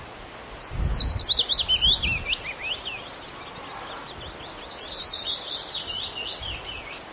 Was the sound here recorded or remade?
recorded